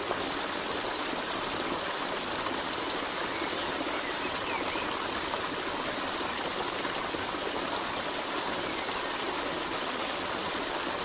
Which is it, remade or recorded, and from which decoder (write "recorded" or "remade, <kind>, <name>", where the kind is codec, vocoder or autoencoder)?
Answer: recorded